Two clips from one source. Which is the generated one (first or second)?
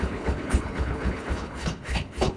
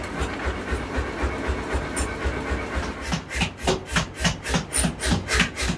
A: first